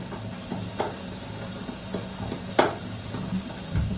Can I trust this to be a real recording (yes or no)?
yes